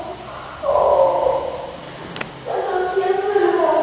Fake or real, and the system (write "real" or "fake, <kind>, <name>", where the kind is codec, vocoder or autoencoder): real